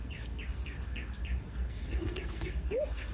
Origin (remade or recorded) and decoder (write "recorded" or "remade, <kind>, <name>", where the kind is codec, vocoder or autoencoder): remade, codec, SNAC